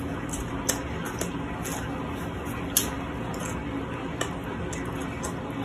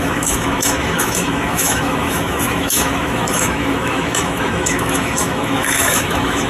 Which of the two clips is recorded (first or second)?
first